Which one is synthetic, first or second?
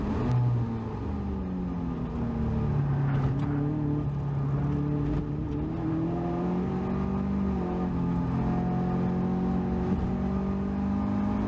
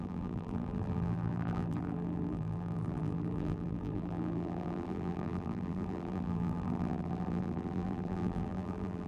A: second